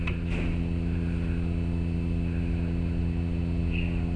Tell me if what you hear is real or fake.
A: real